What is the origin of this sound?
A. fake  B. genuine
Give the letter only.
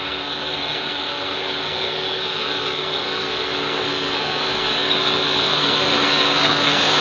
A